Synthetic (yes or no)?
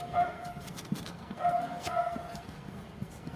yes